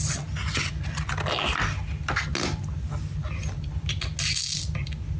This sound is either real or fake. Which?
real